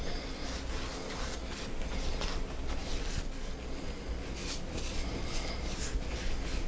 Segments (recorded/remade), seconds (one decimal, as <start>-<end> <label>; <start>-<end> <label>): 0.0-6.7 recorded